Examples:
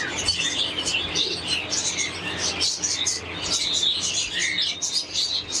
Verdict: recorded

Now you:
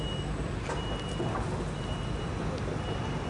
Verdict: recorded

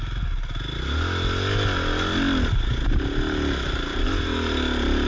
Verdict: recorded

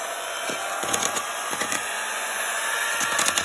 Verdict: remade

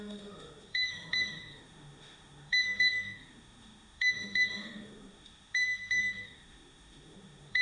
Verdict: remade